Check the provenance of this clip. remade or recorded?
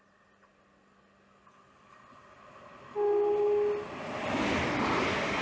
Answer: recorded